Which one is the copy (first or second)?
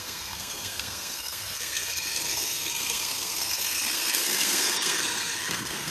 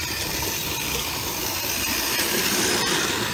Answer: first